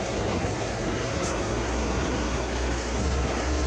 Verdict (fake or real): fake